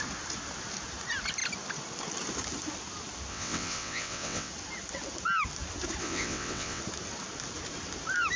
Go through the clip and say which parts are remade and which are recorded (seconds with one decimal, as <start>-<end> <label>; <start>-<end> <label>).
0.0-3.3 recorded; 3.3-4.5 remade; 4.5-6.0 recorded; 6.0-6.8 remade; 6.8-8.4 recorded